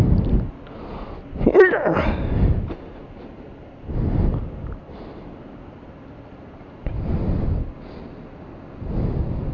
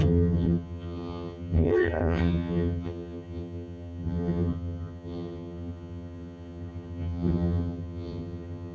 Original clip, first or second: first